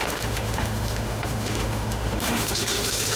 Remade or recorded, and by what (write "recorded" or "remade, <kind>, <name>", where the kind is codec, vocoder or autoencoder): remade, autoencoder, DAC-VAE